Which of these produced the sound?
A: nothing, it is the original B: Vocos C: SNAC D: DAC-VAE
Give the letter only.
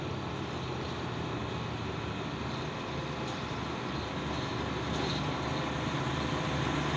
A